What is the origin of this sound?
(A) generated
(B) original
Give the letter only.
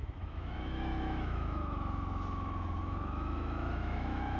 A